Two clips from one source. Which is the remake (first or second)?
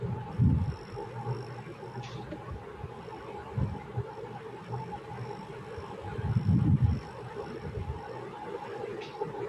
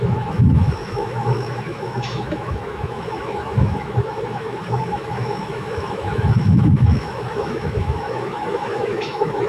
second